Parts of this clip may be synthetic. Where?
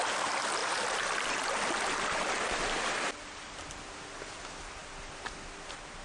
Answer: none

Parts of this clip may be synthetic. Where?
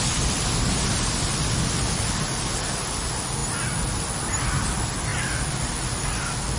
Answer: none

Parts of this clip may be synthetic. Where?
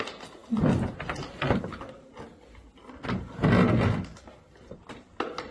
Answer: none